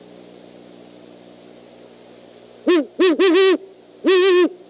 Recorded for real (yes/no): yes